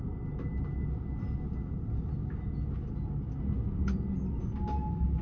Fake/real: real